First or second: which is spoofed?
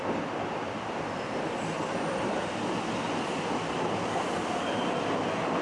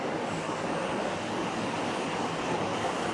second